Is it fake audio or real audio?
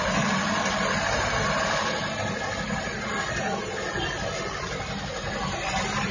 real